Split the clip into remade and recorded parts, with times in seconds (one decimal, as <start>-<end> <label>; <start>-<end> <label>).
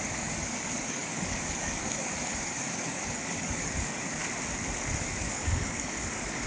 0.0-4.2 remade; 4.2-5.0 recorded; 5.0-6.5 remade